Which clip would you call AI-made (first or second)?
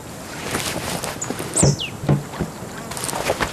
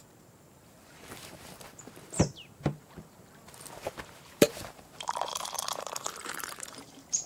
second